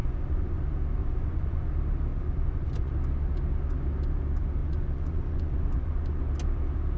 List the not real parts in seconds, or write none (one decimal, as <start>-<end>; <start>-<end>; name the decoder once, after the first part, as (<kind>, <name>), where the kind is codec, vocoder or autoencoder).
0.0-0.6 (vocoder, Vocos); 1.0-1.7; 2.1-2.9; 4.6-6.2